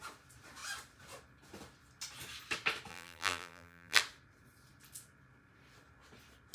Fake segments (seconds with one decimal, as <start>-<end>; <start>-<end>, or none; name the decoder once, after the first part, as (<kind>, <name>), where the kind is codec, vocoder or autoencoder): 2.9-4.0 (vocoder, BigVGAN v2)